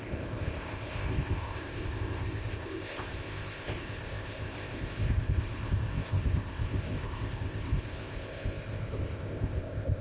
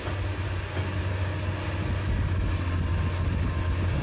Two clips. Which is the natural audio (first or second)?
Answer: second